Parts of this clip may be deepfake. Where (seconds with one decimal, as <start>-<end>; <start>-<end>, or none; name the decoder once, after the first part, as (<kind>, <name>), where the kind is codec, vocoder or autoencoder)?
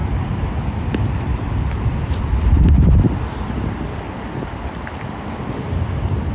none